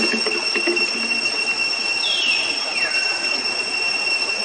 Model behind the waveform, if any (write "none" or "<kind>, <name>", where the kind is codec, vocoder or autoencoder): none